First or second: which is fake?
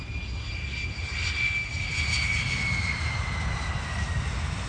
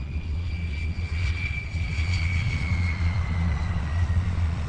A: second